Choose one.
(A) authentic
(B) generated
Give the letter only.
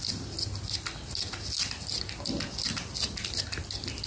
A